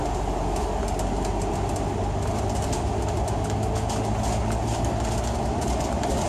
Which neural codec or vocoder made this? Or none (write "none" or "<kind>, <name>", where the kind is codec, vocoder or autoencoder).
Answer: none